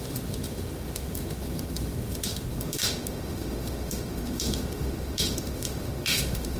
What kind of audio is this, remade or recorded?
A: remade